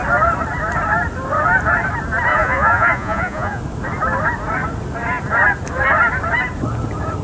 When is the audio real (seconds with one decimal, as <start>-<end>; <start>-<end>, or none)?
0.0-2.3; 3.6-7.2